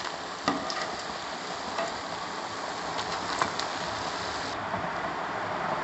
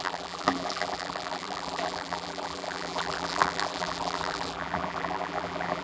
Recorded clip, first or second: first